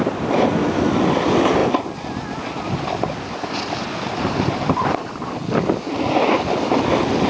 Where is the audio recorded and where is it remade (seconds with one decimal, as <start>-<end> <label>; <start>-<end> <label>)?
0.0-7.3 recorded